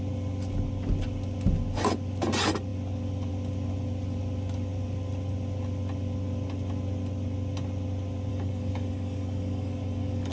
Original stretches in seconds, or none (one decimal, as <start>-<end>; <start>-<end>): 0.0-8.3